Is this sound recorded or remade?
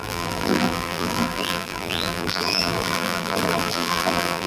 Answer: remade